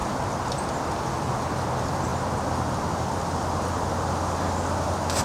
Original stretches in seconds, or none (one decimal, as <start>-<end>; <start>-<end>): 0.0-5.2